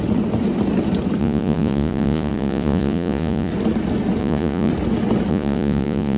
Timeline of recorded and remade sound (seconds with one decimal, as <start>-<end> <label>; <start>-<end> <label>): 0.0-1.2 recorded; 1.2-3.5 remade; 3.5-4.2 recorded; 4.2-4.7 remade; 4.7-5.3 recorded; 5.3-6.2 remade

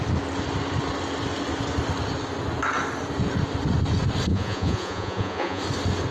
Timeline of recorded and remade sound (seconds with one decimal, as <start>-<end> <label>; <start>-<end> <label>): 0.0-4.3 recorded; 4.3-5.6 remade; 5.6-6.1 recorded